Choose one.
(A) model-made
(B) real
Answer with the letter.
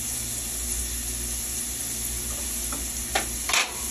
B